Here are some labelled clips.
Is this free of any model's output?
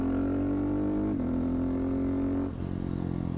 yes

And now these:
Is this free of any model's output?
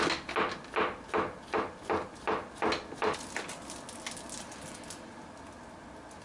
yes